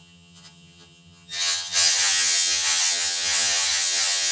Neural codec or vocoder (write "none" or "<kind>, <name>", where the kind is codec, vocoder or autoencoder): vocoder, HiFi-GAN